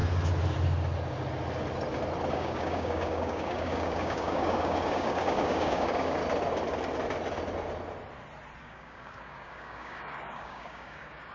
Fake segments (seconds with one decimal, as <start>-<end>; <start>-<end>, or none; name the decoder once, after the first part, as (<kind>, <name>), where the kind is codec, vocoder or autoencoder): 2.3-6.2 (codec, DAC); 8.6-11.3